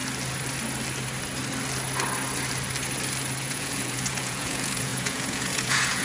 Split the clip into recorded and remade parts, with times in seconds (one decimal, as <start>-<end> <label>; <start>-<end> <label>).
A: 0.0-3.4 recorded; 3.4-6.0 remade